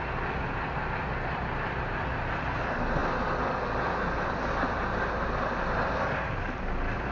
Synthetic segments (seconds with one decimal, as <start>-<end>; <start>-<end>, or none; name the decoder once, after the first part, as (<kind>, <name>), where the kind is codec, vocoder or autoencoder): none

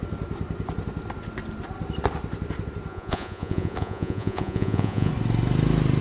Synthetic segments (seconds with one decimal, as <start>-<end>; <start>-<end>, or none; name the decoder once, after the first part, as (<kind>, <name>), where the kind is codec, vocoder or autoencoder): 2.9-5.1 (vocoder, Vocos)

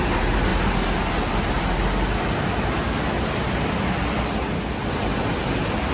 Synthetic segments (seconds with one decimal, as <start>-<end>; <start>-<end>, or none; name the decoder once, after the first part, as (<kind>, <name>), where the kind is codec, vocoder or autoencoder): none

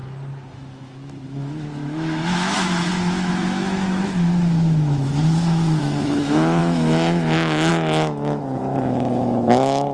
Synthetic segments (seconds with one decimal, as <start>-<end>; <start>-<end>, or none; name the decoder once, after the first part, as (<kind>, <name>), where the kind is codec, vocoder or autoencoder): 0.5-9.9 (autoencoder, DAC-VAE)

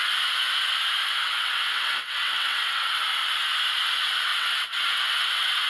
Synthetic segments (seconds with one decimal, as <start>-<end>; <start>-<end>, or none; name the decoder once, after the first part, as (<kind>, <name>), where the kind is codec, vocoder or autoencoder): 1.2-3.0 (vocoder, WaveNeXt); 4.3-5.7

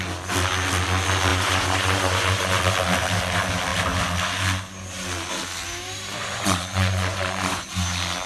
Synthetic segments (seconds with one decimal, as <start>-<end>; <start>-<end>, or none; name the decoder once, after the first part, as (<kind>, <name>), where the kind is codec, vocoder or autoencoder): 1.3-2.6 (vocoder, Vocos); 6.1-7.7

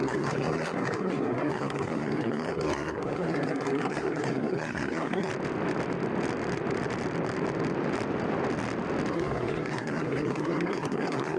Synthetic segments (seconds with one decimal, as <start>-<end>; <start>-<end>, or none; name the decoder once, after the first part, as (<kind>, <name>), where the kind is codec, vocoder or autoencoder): 0.0-5.3 (codec, SNAC); 9.1-11.4